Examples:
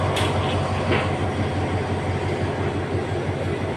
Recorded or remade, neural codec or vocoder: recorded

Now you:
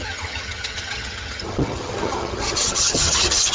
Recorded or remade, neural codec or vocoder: remade, vocoder, HiFi-GAN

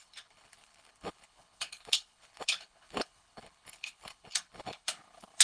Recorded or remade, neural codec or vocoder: remade, codec, HILCodec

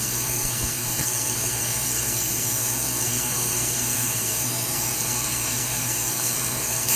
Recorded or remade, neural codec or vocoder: remade, codec, SNAC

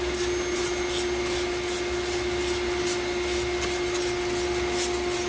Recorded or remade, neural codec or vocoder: recorded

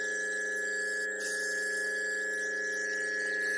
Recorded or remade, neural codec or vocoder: recorded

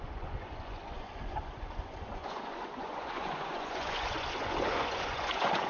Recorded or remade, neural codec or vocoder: remade, vocoder, Vocos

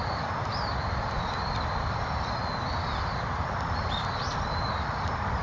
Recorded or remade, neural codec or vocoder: recorded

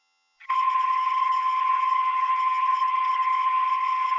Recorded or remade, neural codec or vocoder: remade, vocoder, HiFi-GAN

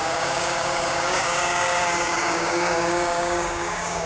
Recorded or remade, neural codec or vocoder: remade, codec, DAC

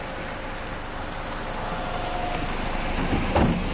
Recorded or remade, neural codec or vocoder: recorded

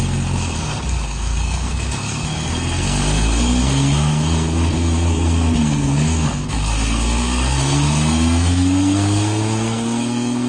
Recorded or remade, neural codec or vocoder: remade, codec, SNAC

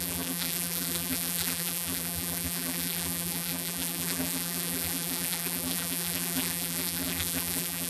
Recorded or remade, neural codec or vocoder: remade, vocoder, BigVGAN v2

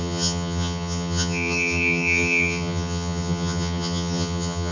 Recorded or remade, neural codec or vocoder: remade, vocoder, HiFi-GAN